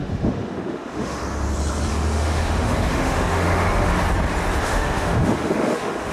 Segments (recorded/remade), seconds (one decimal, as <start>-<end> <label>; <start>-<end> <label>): 0.0-1.2 remade; 1.2-1.9 recorded; 1.9-3.9 remade; 3.9-4.6 recorded; 4.6-6.1 remade